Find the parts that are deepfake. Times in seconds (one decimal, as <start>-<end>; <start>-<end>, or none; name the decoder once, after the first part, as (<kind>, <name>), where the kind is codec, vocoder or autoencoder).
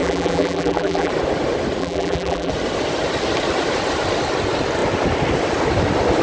0.0-1.1 (vocoder, BigVGAN v2); 1.8-2.5